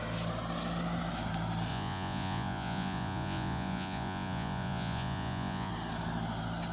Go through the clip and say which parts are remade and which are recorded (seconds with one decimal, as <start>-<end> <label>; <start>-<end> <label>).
0.0-1.7 recorded; 1.7-5.7 remade; 5.7-6.7 recorded